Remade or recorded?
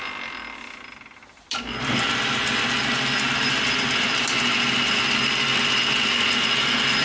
recorded